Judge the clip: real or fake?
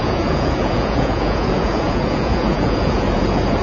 fake